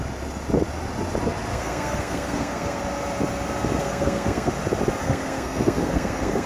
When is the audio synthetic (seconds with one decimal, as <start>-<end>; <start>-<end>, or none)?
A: 1.5-2.8; 3.8-4.5; 5.0-6.5